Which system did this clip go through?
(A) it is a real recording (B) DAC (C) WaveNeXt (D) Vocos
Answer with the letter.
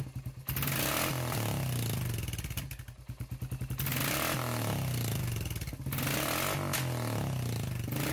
A